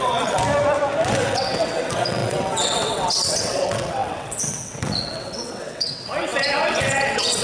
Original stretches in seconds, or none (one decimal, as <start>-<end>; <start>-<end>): 0.4-1.1